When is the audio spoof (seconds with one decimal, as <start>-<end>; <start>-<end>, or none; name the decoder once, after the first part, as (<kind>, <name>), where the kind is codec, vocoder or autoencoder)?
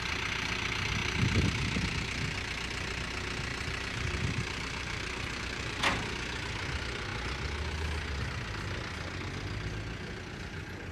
1.0-1.9 (vocoder, BigVGAN v2); 3.5-5.8